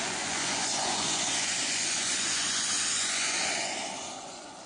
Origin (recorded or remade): remade